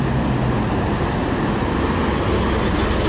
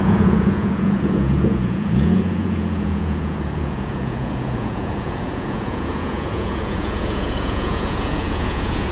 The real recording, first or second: first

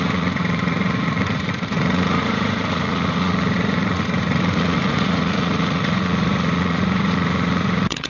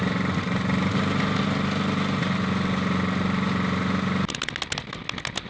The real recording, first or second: second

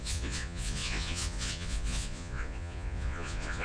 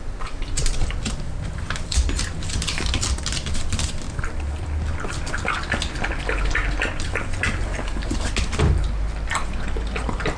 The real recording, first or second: second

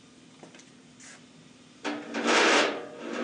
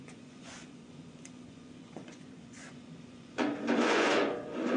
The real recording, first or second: first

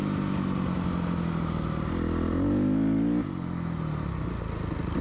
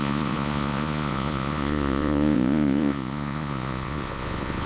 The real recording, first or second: first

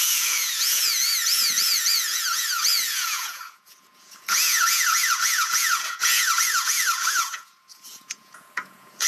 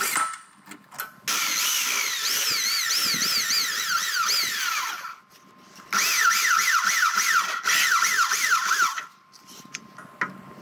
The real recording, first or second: second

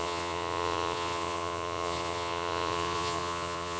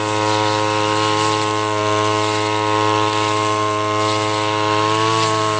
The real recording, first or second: second